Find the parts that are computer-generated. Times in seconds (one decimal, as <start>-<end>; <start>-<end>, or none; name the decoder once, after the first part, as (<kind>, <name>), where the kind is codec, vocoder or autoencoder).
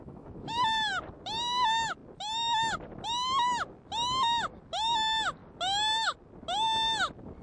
0.0-0.9 (autoencoder, DAC-VAE)